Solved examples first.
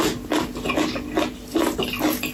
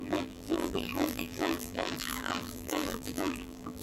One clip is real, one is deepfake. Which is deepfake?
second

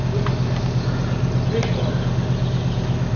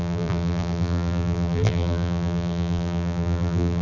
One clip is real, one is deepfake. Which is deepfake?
second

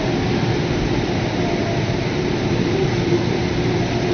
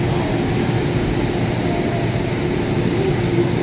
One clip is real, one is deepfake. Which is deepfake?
first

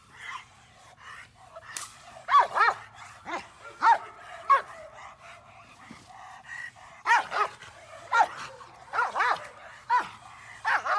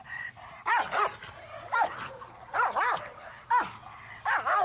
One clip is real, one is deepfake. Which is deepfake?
first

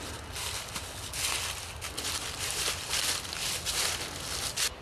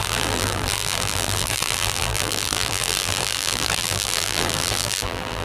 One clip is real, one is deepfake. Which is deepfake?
second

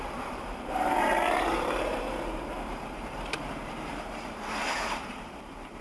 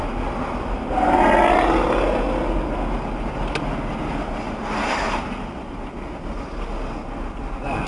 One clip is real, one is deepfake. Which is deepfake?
first